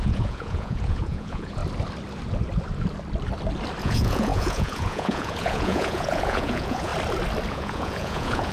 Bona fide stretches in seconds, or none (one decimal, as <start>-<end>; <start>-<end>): 1.6-3.8; 6.9-7.5